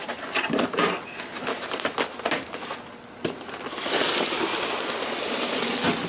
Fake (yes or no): no